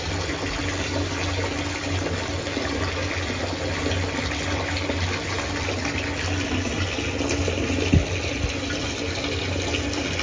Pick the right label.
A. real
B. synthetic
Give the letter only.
A